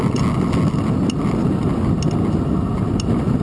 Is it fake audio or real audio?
real